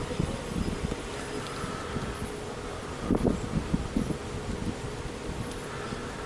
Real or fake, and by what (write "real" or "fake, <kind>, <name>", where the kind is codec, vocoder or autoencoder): real